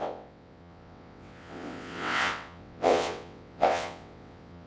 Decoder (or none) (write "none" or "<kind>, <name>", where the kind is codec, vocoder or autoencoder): vocoder, WaveNeXt